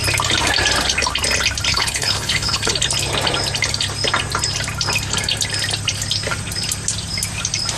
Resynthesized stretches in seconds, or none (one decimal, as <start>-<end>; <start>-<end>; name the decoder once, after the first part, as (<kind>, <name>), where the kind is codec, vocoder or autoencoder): 1.7-2.7 (codec, HILCodec)